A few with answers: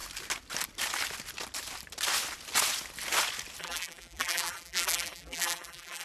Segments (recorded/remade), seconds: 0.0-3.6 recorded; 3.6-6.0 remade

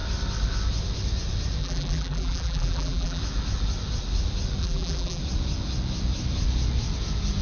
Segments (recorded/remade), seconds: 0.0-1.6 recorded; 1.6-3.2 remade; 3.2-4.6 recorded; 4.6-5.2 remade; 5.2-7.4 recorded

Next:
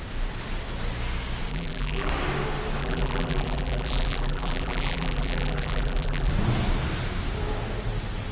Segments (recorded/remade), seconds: 0.0-1.5 recorded; 1.5-2.1 remade; 2.1-2.8 recorded; 2.8-6.3 remade; 6.3-8.3 recorded

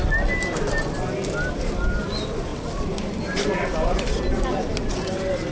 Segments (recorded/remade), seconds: 0.0-2.5 recorded; 2.5-4.9 remade; 4.9-5.5 recorded